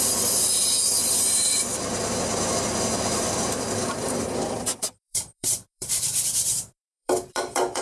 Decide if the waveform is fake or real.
fake